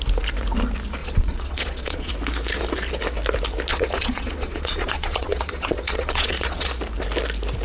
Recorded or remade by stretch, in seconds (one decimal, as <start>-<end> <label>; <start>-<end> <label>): 0.0-1.0 recorded; 1.0-2.1 remade; 2.1-3.7 recorded; 3.7-6.7 remade; 6.7-7.6 recorded